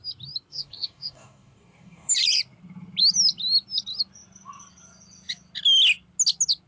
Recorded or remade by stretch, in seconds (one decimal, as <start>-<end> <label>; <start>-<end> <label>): 0.0-0.5 recorded; 0.5-2.1 remade; 2.1-6.7 recorded